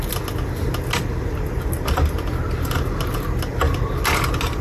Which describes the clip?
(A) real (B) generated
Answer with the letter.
A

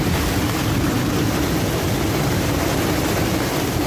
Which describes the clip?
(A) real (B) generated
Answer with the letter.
A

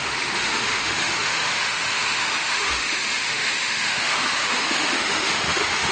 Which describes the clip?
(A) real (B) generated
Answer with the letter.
B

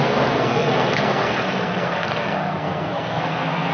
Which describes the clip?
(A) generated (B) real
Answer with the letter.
A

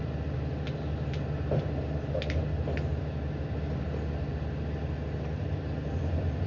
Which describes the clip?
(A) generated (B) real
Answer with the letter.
B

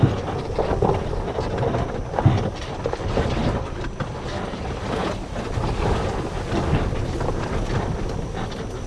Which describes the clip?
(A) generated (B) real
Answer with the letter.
B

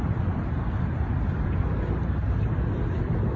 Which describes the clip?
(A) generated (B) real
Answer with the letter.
B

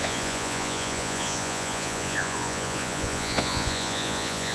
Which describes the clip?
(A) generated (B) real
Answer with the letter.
A